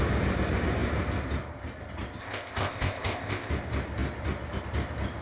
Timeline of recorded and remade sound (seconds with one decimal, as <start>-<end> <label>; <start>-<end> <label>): 0.0-2.2 recorded; 2.2-3.5 remade; 3.5-5.2 recorded